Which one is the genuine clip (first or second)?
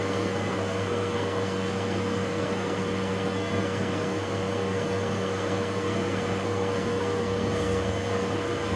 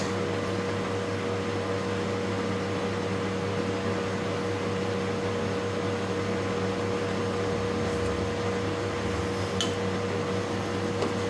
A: second